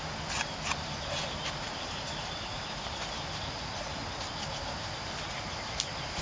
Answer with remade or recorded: recorded